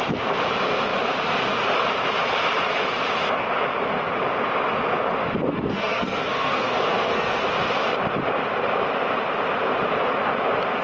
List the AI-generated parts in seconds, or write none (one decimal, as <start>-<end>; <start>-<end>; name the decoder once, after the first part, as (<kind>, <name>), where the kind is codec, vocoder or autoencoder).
5.5-7.4 (codec, SNAC)